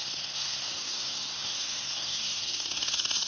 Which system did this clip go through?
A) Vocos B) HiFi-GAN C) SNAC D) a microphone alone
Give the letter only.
C